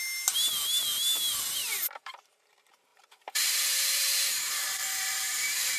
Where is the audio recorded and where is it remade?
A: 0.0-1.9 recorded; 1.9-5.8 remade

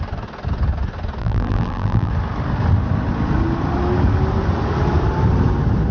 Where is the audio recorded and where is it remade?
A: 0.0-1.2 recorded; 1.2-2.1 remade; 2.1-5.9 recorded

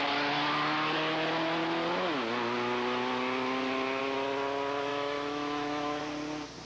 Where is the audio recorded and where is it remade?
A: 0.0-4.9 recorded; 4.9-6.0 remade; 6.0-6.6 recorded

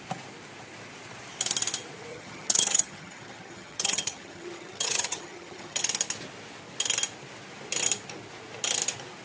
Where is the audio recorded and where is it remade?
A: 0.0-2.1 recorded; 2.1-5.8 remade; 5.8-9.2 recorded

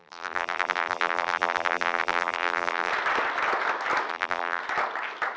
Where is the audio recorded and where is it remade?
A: 0.0-2.9 remade; 2.9-4.1 recorded; 4.1-4.6 remade; 4.6-5.4 recorded

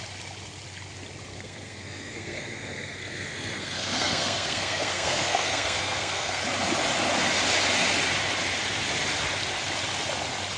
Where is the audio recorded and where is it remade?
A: 0.0-1.3 recorded; 1.3-6.4 remade; 6.4-10.6 recorded

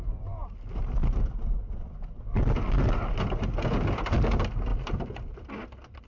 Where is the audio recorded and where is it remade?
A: 0.0-4.7 recorded; 4.7-6.1 remade